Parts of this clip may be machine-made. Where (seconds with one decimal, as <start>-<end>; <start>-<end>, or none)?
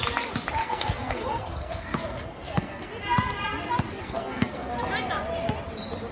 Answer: 0.6-2.9; 4.0-4.7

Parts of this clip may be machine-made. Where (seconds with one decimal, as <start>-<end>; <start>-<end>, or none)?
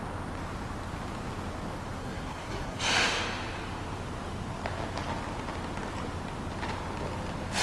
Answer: 2.0-2.8